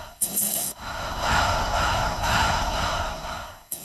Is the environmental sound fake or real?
fake